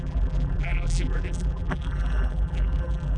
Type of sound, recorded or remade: remade